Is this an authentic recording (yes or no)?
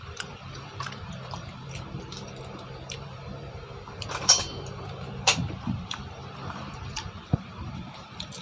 no